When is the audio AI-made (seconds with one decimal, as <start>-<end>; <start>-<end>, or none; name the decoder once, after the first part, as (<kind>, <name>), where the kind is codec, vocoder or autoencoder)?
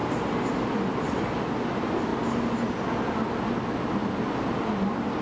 none